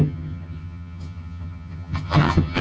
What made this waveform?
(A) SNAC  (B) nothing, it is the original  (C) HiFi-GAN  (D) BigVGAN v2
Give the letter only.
C